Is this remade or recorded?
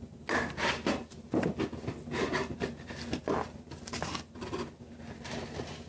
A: recorded